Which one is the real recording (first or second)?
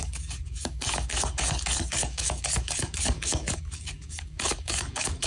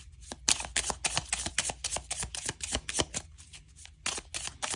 second